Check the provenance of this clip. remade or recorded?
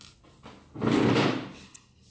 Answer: recorded